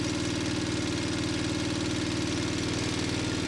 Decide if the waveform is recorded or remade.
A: recorded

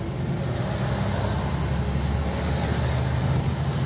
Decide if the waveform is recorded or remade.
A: recorded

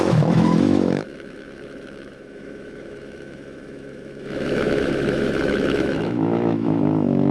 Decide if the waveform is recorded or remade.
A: remade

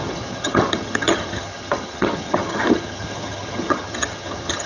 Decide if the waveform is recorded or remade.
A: remade